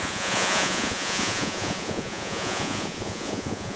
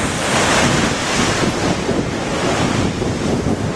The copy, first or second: first